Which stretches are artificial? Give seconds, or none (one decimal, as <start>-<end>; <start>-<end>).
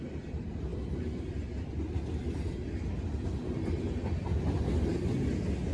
none